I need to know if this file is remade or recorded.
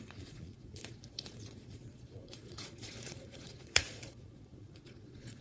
remade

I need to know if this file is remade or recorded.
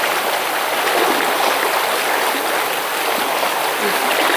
recorded